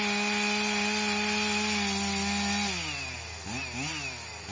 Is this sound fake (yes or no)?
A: no